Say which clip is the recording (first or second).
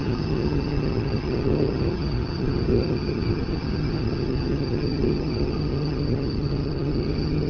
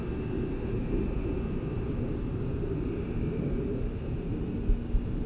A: second